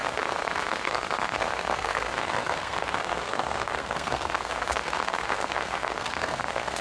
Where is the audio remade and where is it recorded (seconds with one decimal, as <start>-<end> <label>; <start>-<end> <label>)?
0.0-6.8 remade